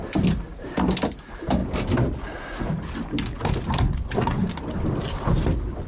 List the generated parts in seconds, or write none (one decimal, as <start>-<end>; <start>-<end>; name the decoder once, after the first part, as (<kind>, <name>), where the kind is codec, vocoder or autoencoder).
none